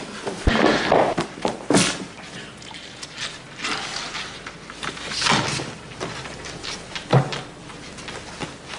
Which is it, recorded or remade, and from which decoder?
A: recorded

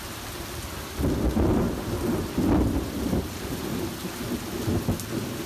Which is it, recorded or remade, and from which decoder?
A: recorded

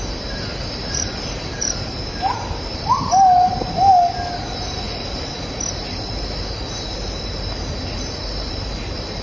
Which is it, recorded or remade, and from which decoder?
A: recorded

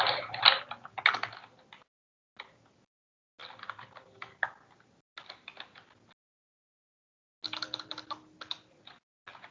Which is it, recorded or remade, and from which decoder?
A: recorded